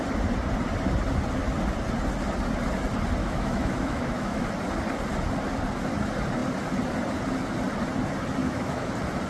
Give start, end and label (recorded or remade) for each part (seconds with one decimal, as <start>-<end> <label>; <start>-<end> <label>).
0.0-3.2 recorded; 3.2-4.5 remade; 4.5-8.4 recorded; 8.4-8.9 remade; 8.9-9.3 recorded